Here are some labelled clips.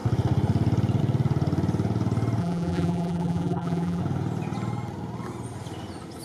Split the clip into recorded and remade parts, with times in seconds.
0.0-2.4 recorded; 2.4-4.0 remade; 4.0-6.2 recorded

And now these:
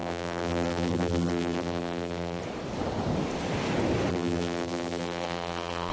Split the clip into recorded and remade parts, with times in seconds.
0.0-2.4 remade; 2.4-4.1 recorded; 4.1-5.9 remade

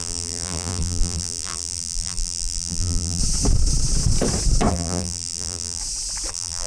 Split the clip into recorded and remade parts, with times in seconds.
0.0-3.2 remade; 3.2-4.7 recorded; 4.7-5.8 remade; 5.8-6.3 recorded; 6.3-6.7 remade

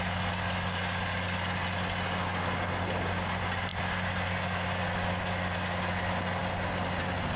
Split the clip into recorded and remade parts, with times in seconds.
0.0-3.7 recorded; 3.7-4.3 remade; 4.3-7.4 recorded

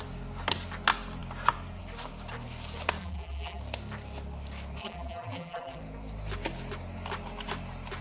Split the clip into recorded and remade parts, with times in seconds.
0.0-3.0 recorded; 3.0-3.6 remade; 3.6-4.8 recorded; 4.8-5.8 remade; 5.8-8.0 recorded

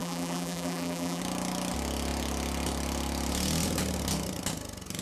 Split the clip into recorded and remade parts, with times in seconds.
0.0-1.2 remade; 1.2-5.0 recorded

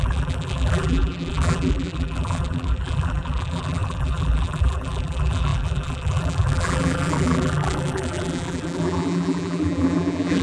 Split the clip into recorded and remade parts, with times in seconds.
0.0-10.4 remade

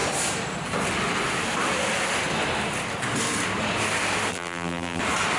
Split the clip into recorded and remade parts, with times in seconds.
0.0-4.3 recorded; 4.3-5.0 remade; 5.0-5.4 recorded